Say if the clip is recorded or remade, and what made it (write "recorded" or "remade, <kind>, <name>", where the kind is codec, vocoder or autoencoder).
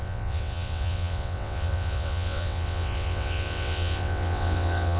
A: remade, vocoder, WaveNeXt